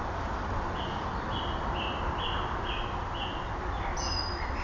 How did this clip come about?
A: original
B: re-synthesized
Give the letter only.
A